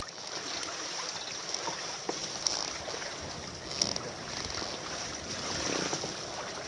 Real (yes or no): yes